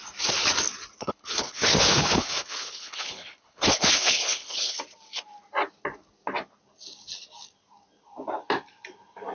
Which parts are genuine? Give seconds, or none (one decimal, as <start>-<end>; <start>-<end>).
0.0-1.0; 4.8-9.3